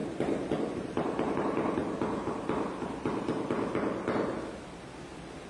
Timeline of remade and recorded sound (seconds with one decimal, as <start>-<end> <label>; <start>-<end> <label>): 0.0-1.8 remade; 1.8-5.1 recorded; 5.1-5.5 remade